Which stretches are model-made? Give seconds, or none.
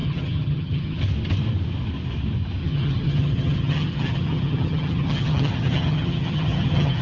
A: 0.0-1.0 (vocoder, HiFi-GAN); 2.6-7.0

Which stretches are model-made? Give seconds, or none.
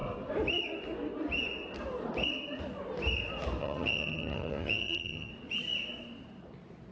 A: 3.6-5.3 (vocoder, HiFi-GAN)